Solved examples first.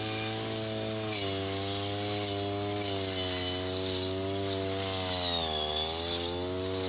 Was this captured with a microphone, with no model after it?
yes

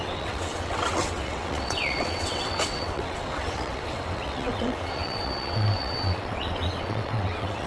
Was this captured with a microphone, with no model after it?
no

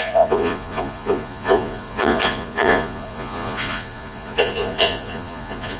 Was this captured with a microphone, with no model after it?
no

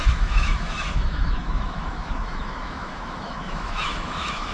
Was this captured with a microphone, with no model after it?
no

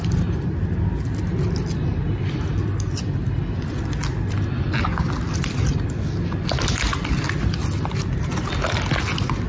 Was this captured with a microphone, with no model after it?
yes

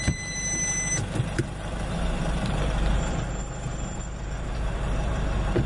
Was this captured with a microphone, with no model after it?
no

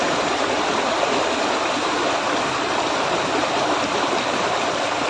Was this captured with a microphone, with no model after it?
no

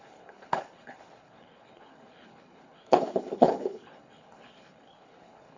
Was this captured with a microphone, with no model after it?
no